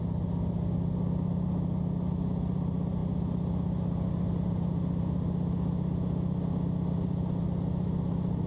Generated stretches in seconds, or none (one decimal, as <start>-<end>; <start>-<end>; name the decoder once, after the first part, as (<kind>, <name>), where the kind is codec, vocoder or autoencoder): none